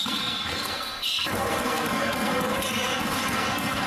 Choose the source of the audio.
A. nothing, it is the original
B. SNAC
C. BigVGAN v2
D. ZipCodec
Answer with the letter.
B